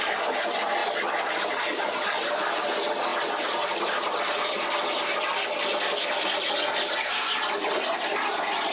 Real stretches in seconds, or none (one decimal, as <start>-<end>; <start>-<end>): 0.0-8.7